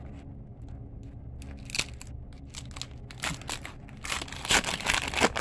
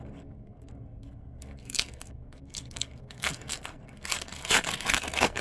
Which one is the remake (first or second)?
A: second